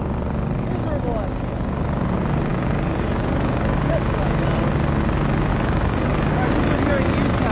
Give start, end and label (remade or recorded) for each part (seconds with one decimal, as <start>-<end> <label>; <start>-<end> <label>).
0.0-2.5 recorded; 2.5-4.0 remade; 4.0-5.5 recorded; 5.5-6.5 remade; 6.5-7.5 recorded